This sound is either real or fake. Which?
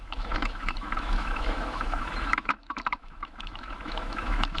fake